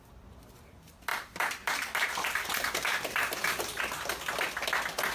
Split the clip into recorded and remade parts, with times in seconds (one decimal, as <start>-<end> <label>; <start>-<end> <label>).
0.0-1.1 recorded; 1.1-3.8 remade; 3.8-5.1 recorded